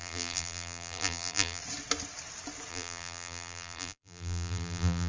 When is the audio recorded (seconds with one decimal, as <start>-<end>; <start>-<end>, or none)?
1.6-2.7